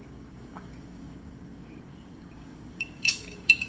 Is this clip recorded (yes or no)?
no